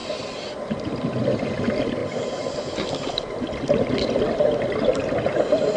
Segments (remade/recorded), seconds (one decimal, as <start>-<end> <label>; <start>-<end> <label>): 0.0-5.8 recorded